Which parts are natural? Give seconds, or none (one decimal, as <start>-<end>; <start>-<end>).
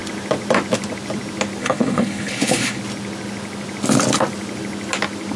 0.0-1.6; 2.8-5.4